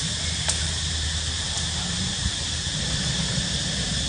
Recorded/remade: remade